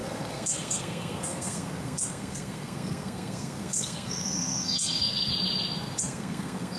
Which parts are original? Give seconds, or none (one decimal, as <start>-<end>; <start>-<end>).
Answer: 5.3-6.0